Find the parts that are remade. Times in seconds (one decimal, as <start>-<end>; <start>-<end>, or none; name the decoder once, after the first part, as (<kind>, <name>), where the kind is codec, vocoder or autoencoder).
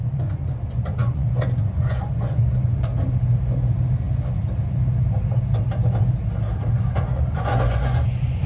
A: 0.0-2.9 (vocoder, Vocos); 6.7-8.5